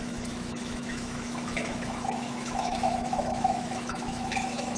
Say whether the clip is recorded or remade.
remade